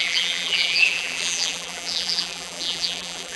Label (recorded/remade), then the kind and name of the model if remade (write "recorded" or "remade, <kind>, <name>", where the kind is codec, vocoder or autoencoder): remade, vocoder, BigVGAN v2